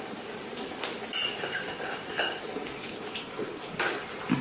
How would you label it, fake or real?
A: real